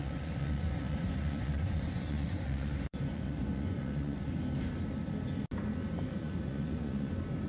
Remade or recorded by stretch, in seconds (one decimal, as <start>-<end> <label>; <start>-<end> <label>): 0.0-4.3 remade; 4.3-6.2 recorded; 6.2-7.1 remade; 7.1-7.5 recorded